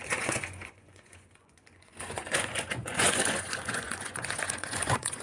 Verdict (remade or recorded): remade